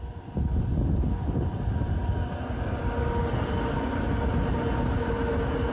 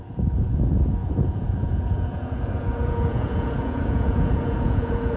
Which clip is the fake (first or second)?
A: second